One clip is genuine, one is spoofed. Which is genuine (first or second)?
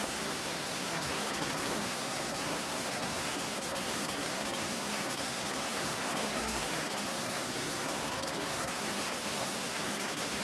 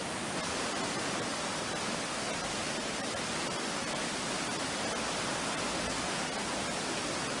second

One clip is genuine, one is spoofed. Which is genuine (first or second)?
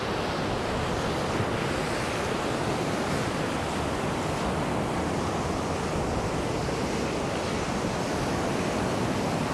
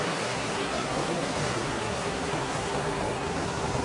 first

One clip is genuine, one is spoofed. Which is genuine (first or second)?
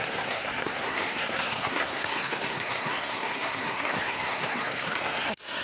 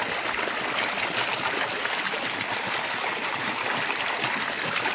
second